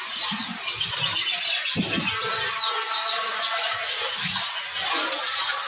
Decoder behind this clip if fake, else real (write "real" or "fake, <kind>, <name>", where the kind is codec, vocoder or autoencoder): real